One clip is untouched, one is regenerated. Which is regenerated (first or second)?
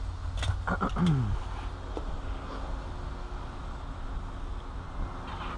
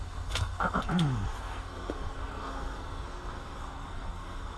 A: second